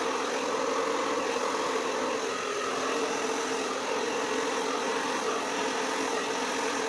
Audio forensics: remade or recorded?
recorded